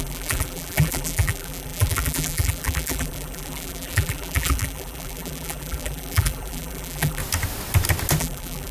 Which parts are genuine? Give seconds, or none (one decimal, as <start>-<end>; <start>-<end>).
7.2-8.2